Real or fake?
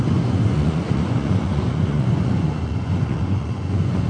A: fake